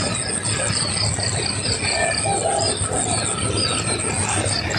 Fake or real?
real